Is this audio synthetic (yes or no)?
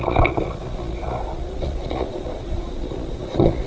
yes